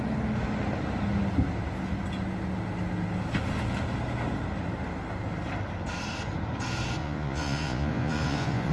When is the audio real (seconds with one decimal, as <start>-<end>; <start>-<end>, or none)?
0.0-7.0